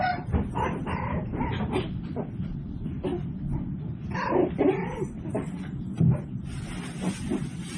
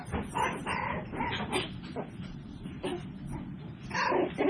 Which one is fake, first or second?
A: first